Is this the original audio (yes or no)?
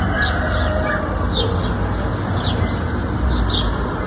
yes